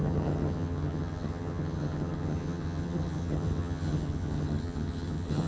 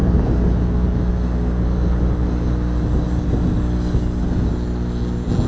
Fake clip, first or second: first